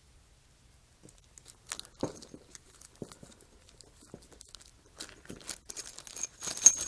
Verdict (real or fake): real